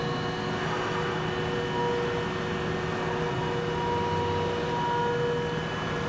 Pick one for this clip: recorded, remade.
recorded